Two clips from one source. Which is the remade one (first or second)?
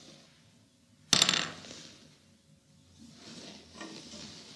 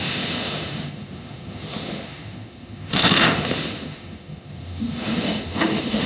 second